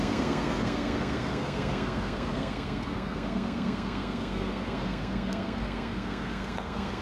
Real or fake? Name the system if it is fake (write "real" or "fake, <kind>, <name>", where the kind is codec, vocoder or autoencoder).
fake, codec, SNAC